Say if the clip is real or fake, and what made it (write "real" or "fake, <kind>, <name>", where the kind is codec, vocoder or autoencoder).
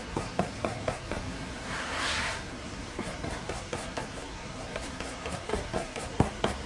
fake, codec, SNAC